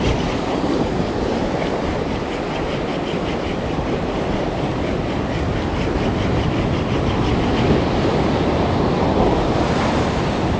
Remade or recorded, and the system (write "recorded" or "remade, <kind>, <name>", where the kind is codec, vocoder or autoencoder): recorded